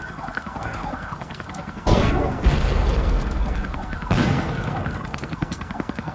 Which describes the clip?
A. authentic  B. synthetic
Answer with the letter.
B